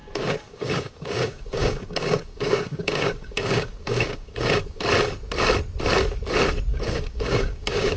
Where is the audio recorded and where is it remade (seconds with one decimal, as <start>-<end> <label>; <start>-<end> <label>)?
0.0-4.8 remade; 4.8-6.7 recorded; 6.7-8.0 remade